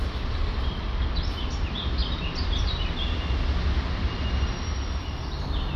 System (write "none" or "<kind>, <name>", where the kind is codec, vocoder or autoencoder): none